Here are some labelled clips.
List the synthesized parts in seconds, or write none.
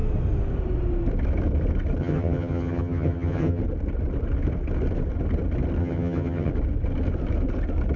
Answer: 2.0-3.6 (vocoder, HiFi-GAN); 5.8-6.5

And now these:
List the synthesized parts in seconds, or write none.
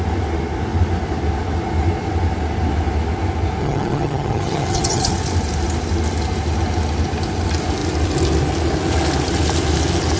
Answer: 3.6-5.1 (vocoder, HiFi-GAN)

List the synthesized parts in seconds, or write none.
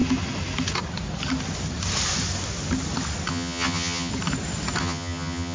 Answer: 3.3-4.1 (vocoder, HiFi-GAN); 4.8-5.5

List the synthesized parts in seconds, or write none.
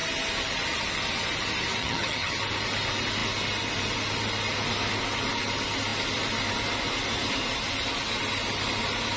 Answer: 1.8-2.4 (vocoder, HiFi-GAN)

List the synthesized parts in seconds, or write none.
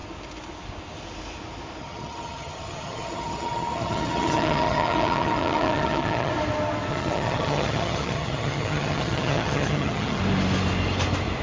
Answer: 1.8-6.3 (vocoder, HiFi-GAN); 6.9-10.2